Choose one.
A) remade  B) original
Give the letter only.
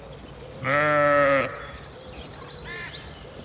B